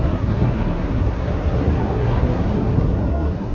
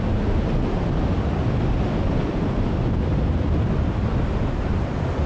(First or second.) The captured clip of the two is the second